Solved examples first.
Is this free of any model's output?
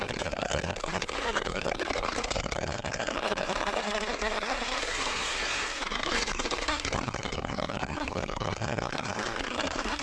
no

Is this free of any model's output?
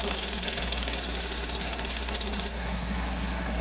no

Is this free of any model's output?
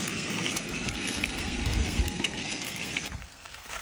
no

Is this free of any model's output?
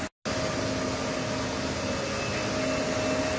yes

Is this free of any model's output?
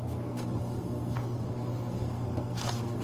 no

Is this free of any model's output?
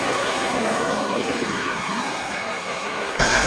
no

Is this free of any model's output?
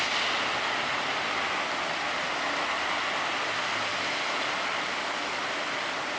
yes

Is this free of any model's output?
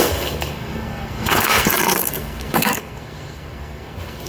no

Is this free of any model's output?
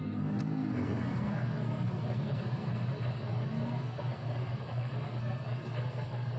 no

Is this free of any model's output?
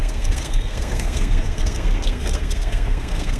no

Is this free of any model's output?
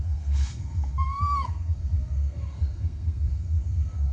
no